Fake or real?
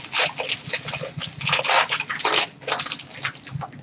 real